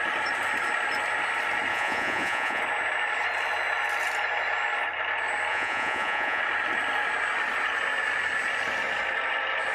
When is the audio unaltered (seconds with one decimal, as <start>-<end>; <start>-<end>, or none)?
0.0-1.7; 2.6-5.5; 6.4-9.7